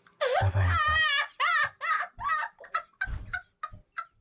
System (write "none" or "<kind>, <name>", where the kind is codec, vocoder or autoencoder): none